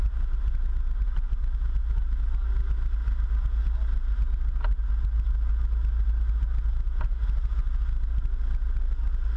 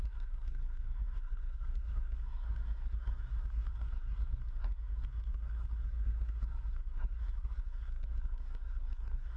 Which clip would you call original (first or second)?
first